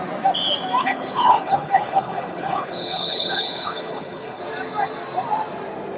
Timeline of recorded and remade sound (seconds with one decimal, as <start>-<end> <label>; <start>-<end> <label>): 0.0-0.8 recorded; 0.8-4.4 remade; 4.4-6.0 recorded